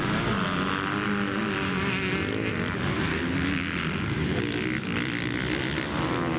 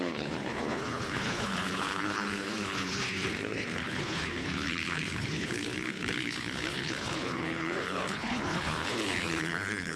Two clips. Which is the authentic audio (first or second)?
first